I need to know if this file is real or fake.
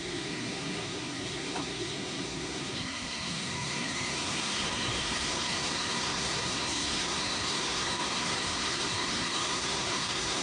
fake